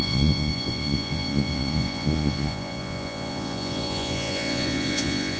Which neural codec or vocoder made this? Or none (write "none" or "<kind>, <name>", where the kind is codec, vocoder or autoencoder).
vocoder, Vocos